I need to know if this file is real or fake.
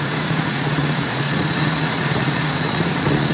fake